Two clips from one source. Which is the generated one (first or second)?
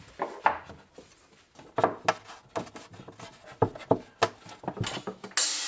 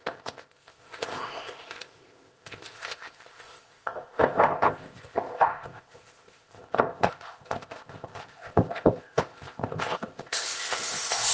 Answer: second